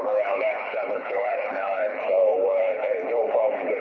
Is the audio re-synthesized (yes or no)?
yes